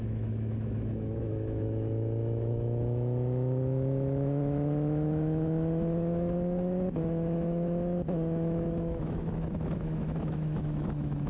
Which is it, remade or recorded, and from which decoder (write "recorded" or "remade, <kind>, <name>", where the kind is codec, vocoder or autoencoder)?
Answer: remade, autoencoder, DAC-VAE